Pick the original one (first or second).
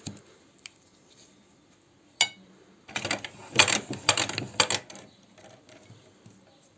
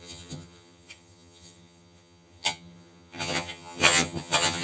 first